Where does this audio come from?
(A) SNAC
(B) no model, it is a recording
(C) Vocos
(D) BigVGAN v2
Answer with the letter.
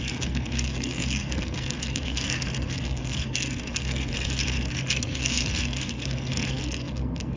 A